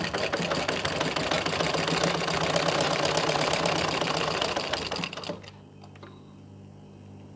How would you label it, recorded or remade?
recorded